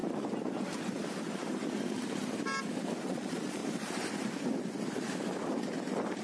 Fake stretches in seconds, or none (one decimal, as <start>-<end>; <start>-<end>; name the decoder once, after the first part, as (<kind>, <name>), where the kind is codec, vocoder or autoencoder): 3.0-3.6 (vocoder, Vocos)